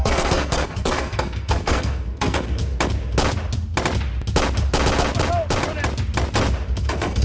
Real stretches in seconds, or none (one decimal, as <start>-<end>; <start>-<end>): 2.6-6.8